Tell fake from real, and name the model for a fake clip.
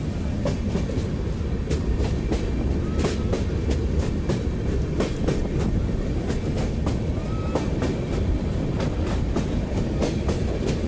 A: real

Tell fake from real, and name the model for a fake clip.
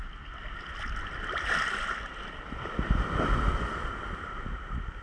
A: real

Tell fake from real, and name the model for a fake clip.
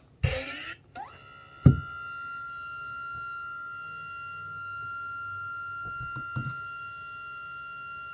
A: real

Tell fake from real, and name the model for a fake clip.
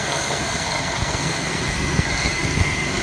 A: fake, codec, SNAC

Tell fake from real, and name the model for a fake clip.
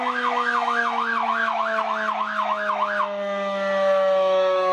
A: fake, autoencoder, DAC-VAE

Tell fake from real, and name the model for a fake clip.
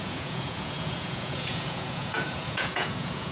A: fake, vocoder, Vocos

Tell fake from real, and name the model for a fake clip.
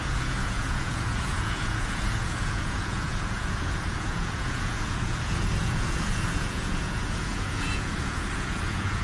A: fake, vocoder, Vocos